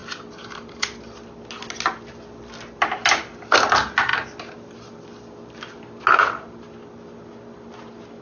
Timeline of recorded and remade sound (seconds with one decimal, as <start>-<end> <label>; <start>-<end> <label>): 0.0-8.2 recorded